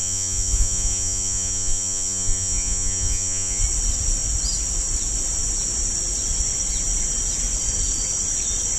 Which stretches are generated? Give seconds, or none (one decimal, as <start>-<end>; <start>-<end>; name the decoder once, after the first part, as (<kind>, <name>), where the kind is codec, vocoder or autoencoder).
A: 0.0-3.6 (vocoder, Vocos)